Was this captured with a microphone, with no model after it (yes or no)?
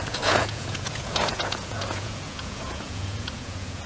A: no